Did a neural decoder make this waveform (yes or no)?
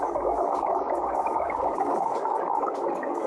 yes